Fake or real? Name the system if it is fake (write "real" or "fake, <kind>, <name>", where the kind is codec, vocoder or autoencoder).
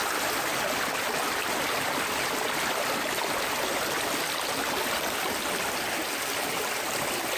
real